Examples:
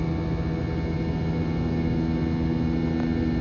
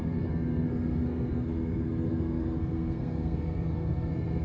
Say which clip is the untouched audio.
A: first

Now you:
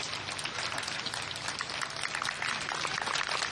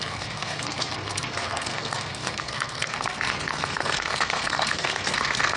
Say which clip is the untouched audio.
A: first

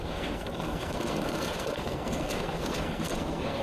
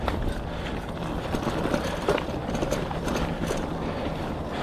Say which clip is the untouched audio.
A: second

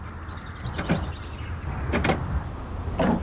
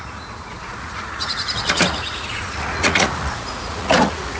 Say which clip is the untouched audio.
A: first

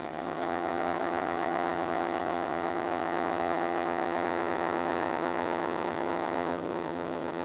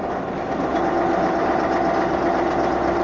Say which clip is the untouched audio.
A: second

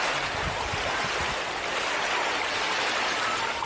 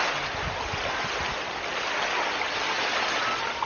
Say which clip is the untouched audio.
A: second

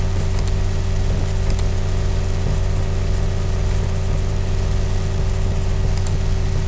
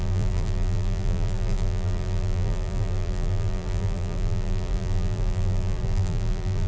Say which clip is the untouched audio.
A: first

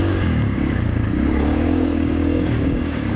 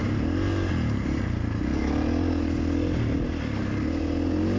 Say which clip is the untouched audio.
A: second